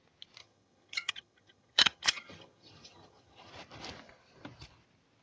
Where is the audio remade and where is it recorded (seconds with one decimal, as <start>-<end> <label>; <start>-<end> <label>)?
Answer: 0.0-0.4 recorded; 0.4-3.5 remade; 3.5-5.2 recorded